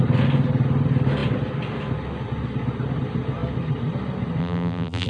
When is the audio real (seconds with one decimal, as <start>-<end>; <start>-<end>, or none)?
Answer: 0.0-4.4